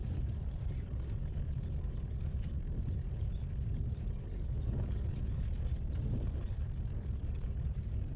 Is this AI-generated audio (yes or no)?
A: no